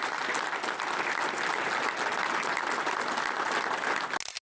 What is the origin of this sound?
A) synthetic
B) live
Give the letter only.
B